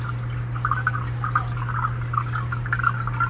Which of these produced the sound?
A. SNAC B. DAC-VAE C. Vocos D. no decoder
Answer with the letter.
D